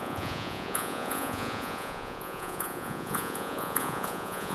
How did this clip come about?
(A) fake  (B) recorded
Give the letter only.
A